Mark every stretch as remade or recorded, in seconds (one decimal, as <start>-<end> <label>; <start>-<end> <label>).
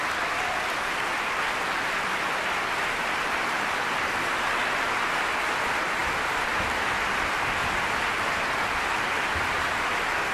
0.0-1.1 recorded; 1.1-1.7 remade; 1.7-6.0 recorded; 6.0-8.4 remade; 8.4-10.3 recorded